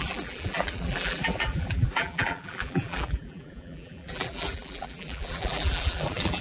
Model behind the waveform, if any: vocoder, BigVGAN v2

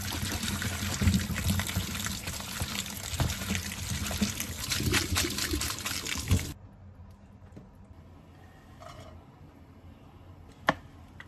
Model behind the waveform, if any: none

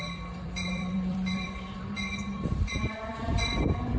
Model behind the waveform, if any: vocoder, BigVGAN v2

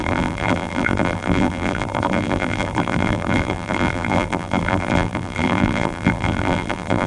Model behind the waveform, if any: vocoder, BigVGAN v2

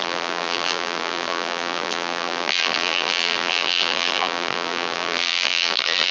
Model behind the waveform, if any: vocoder, BigVGAN v2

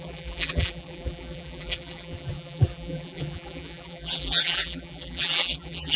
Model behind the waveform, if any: vocoder, BigVGAN v2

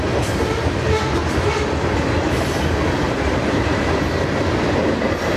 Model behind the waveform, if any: none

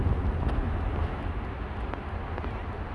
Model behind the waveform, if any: none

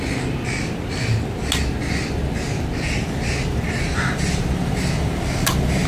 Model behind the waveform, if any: none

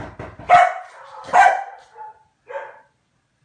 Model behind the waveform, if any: none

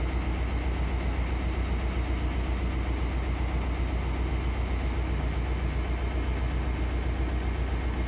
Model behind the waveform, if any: none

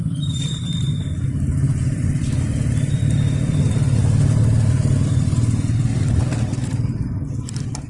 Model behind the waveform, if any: vocoder, BigVGAN v2